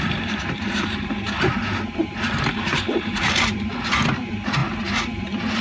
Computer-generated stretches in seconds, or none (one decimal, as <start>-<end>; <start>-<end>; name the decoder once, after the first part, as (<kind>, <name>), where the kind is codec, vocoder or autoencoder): 0.0-5.6 (vocoder, BigVGAN v2)